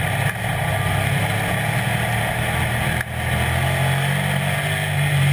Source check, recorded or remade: recorded